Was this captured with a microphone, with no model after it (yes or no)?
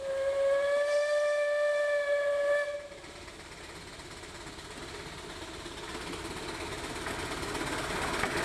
yes